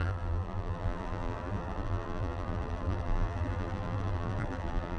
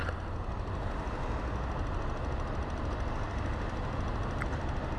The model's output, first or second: first